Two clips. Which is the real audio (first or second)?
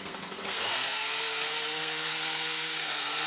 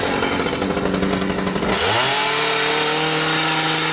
second